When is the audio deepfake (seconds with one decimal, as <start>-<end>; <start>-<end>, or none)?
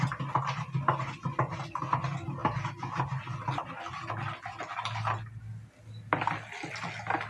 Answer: none